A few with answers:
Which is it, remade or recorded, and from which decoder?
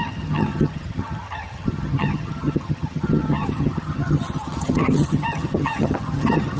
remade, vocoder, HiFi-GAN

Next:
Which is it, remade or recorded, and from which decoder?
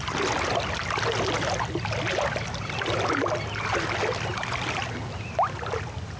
recorded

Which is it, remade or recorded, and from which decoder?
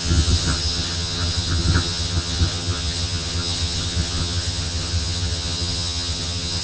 remade, vocoder, HiFi-GAN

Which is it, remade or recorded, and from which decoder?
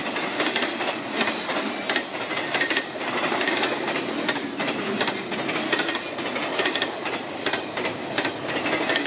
recorded